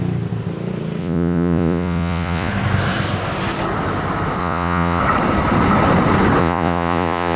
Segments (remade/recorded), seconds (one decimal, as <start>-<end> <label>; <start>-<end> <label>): 0.0-1.0 recorded; 1.0-2.5 remade; 2.5-4.4 recorded; 4.4-5.0 remade; 5.0-6.4 recorded; 6.4-7.4 remade